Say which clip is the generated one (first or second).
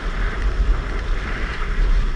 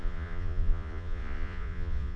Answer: second